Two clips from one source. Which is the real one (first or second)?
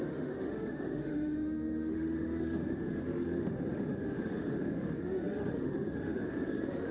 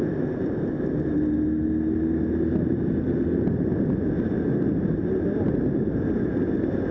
second